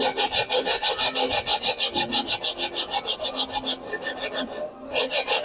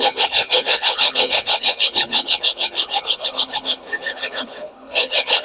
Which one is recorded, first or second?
first